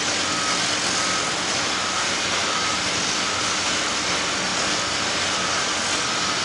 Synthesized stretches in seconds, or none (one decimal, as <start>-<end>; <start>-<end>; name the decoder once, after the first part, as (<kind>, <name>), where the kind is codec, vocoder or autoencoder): none